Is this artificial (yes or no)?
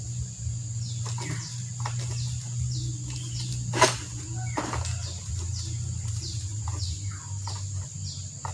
no